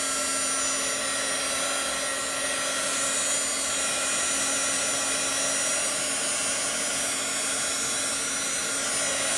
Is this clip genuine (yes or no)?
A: yes